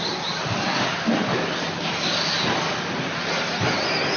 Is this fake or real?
real